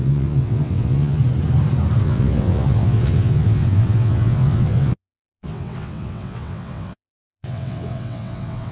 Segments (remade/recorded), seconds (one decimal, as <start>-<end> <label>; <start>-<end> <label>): 0.0-1.2 remade; 1.2-2.0 recorded; 2.0-8.7 remade